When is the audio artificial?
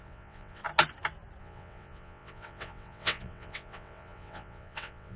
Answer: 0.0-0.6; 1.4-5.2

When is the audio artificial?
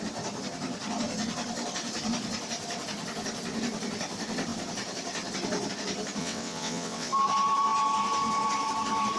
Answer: 6.2-7.1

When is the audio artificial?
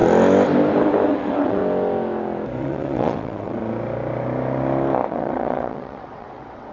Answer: 1.1-1.6; 2.6-3.6; 5.1-6.7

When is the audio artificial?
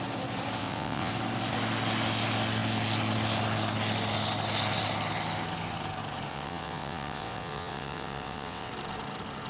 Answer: 0.6-1.1; 6.3-8.7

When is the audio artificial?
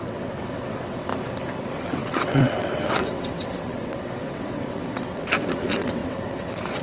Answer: 0.0-1.1; 1.6-6.8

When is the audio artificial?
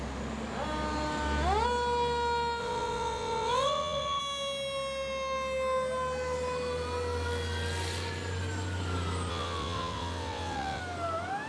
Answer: 2.6-4.2; 9.3-10.8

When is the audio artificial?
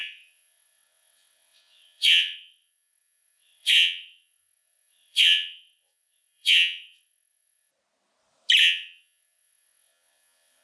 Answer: 0.0-7.7; 8.6-10.6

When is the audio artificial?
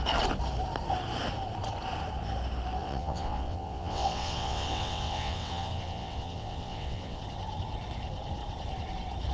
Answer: 2.8-7.2